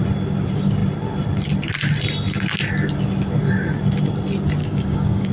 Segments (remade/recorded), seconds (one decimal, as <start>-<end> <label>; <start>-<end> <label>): 0.0-4.6 recorded; 4.6-5.3 remade